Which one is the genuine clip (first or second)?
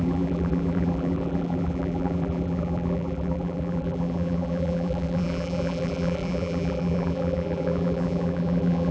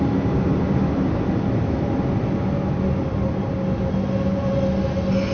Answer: second